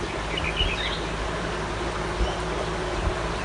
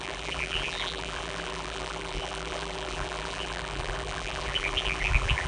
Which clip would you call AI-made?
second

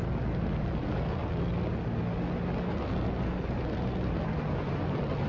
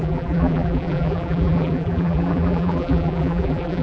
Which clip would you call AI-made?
second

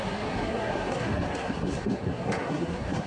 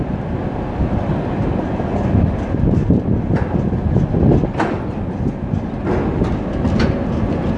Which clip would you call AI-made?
first